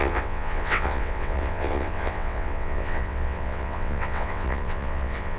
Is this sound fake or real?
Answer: fake